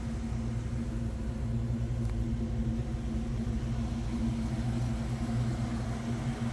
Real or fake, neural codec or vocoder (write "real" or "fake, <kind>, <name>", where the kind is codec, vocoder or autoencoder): real